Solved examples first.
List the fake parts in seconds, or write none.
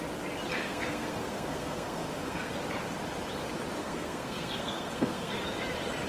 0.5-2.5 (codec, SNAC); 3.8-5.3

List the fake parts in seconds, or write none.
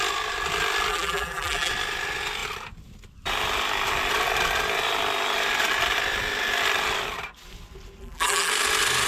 0.9-1.7 (vocoder, BigVGAN v2); 8.0-8.5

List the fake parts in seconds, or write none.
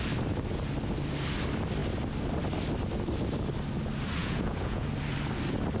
4.2-4.9 (vocoder, Vocos)